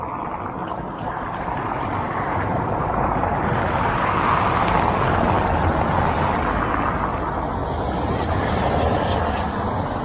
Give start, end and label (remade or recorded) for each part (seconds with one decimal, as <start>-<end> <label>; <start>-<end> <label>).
0.0-0.6 recorded; 0.6-4.1 remade; 4.1-10.0 recorded